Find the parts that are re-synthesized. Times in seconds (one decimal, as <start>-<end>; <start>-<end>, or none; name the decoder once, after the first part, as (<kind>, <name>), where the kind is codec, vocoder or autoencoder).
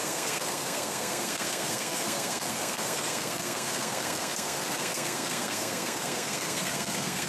0.0-7.3 (codec, SNAC)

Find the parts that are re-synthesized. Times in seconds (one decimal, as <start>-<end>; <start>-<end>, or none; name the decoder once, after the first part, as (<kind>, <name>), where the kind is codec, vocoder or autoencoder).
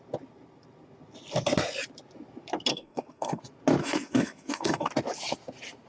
2.7-3.4 (codec, SNAC); 3.8-4.9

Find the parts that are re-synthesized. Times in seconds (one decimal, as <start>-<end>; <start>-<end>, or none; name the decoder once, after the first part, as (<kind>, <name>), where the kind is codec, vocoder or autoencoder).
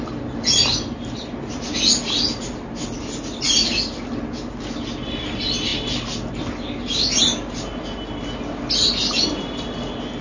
none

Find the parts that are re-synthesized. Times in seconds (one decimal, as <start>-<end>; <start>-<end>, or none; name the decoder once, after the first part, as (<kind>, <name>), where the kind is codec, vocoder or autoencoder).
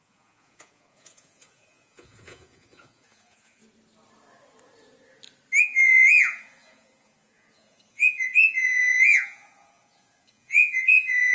0.0-3.6 (vocoder, Vocos); 5.6-11.3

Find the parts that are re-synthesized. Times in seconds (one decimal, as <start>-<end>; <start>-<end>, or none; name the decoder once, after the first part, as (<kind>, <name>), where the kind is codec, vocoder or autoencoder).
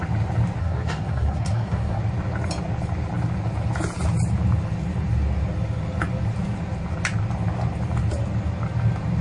0.6-2.0 (codec, SNAC)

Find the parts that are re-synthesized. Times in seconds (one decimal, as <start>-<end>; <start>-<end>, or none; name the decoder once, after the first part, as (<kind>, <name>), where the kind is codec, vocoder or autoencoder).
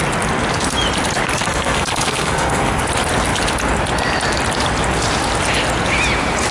1.4-2.8 (codec, SNAC)